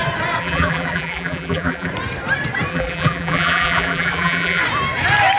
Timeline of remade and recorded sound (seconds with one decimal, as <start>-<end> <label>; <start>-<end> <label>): 0.0-0.4 recorded; 0.4-1.9 remade; 1.9-2.7 recorded; 2.7-4.6 remade; 4.6-5.4 recorded